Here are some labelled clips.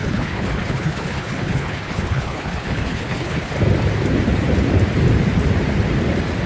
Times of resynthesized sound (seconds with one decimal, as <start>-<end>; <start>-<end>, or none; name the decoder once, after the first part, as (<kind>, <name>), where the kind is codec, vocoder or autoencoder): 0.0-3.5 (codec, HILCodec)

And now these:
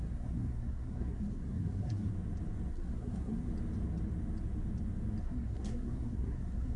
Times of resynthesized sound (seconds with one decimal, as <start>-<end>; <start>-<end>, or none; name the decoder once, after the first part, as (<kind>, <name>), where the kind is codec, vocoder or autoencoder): 0.0-2.1 (codec, SNAC); 2.7-3.5; 5.2-6.8

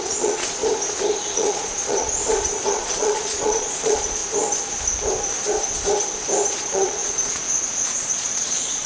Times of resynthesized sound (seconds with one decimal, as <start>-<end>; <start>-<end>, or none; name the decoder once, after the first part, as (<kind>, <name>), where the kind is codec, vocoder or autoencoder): 0.0-0.6 (vocoder, Vocos); 1.3-2.2; 2.7-4.2; 6.5-8.9

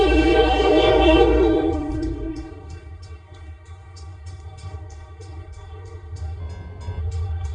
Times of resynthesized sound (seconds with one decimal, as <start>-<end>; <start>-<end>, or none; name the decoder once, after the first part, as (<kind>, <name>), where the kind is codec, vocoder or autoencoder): 0.0-6.4 (codec, SNAC); 7.0-7.5

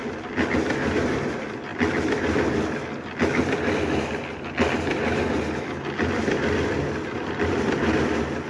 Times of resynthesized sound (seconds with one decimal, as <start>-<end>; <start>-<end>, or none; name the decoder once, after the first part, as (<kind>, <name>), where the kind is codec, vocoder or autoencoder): none